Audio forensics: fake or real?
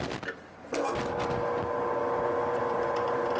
fake